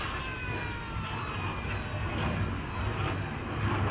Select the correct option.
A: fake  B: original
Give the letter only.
B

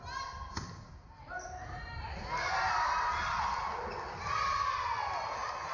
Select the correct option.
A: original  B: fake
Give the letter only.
A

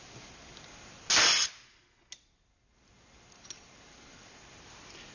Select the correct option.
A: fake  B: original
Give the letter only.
B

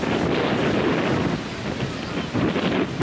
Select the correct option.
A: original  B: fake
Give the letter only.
A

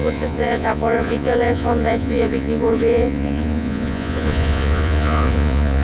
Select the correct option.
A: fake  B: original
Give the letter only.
A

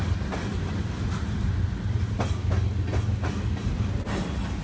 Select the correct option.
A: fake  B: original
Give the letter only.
B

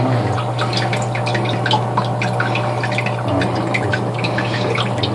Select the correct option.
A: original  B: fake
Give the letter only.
B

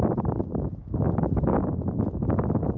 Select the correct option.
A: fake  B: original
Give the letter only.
B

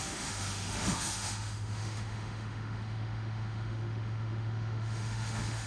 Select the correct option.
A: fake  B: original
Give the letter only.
A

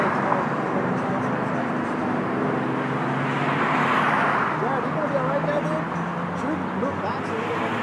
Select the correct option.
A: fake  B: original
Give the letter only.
B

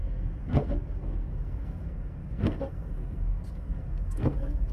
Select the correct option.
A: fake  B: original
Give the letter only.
A